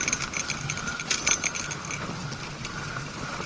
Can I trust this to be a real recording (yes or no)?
yes